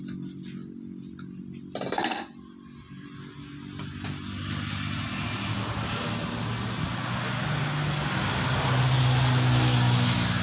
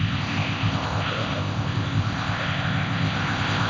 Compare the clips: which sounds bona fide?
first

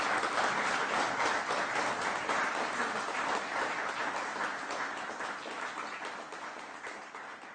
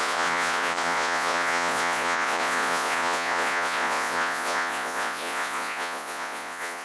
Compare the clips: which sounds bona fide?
first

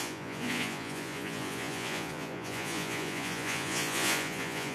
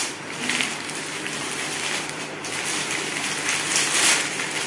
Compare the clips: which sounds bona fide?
second